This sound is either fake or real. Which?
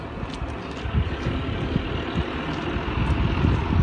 real